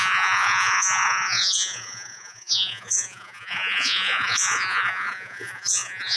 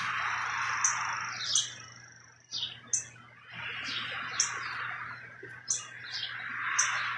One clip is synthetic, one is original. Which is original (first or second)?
second